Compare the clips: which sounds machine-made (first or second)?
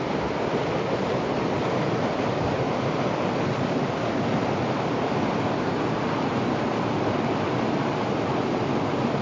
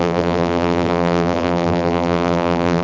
second